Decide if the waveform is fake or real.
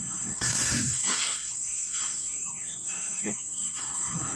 fake